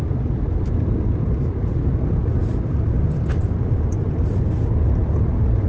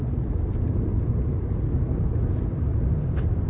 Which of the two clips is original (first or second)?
second